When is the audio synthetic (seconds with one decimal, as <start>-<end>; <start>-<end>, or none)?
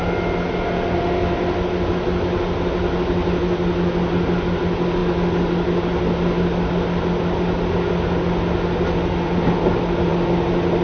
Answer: none